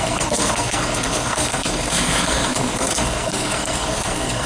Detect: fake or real fake